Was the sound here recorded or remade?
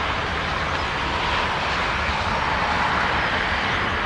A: recorded